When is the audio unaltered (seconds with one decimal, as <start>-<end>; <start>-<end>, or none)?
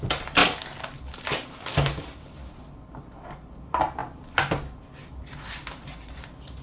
0.0-6.6